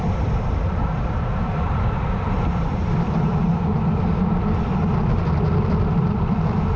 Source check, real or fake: fake